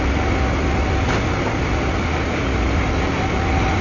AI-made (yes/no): no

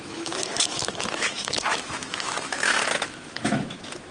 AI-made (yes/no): yes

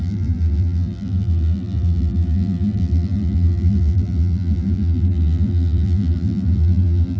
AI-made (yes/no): yes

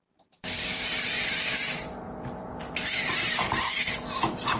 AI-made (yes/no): yes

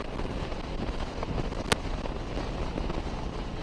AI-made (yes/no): no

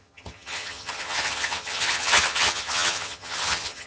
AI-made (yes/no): yes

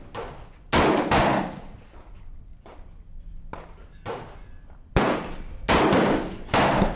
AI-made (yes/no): no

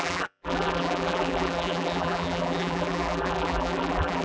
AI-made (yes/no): yes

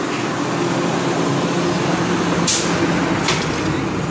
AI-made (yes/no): no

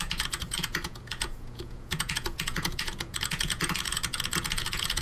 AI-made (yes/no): yes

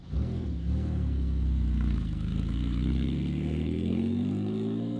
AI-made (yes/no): yes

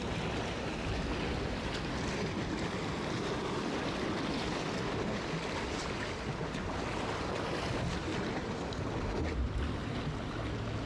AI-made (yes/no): no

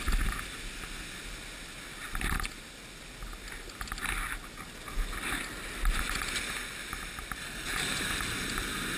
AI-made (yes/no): no